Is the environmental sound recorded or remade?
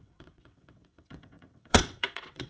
remade